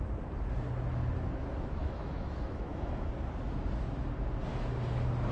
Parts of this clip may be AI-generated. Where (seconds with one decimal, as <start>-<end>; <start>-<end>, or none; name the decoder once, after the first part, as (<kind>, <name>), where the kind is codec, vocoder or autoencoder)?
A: 1.8-3.1 (autoencoder, DAC-VAE)